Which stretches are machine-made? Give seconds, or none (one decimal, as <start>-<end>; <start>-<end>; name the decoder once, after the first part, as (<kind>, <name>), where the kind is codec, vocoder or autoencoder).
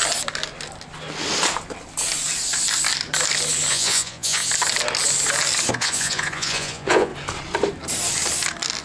3.7-4.4 (vocoder, Vocos); 5.7-7.1